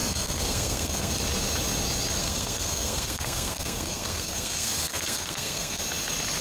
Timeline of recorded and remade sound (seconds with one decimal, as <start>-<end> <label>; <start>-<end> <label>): 0.0-1.1 remade; 1.1-2.2 recorded; 2.2-5.8 remade; 5.8-6.4 recorded